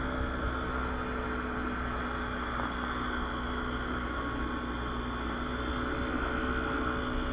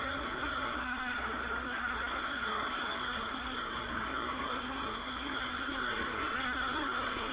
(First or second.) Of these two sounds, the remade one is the second